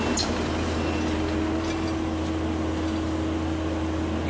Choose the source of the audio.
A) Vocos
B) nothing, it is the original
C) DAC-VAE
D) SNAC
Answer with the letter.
B